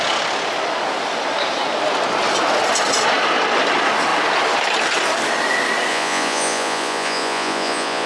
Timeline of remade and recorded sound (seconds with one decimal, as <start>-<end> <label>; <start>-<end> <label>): 0.0-5.9 recorded; 5.9-8.1 remade